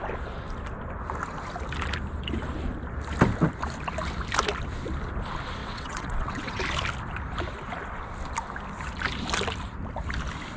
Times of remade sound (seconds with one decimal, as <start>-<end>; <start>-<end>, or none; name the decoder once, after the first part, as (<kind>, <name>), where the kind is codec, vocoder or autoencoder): 5.6-6.6 (vocoder, WaveNeXt)